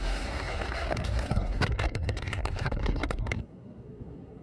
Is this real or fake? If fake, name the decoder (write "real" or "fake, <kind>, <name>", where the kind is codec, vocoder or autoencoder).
fake, codec, SNAC